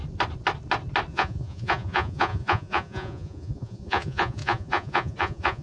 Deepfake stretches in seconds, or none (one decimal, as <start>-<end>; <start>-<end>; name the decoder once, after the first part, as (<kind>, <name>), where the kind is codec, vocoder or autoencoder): 1.1-5.6 (vocoder, Vocos)